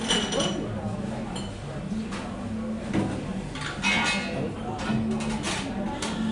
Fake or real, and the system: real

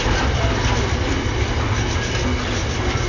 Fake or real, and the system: real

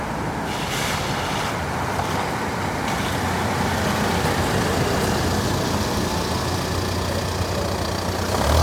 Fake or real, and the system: real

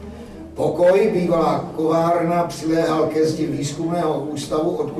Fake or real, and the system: real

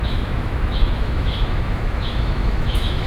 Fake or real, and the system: fake, autoencoder, DAC-VAE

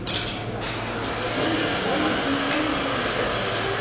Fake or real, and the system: real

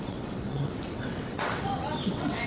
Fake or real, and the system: fake, vocoder, WaveNeXt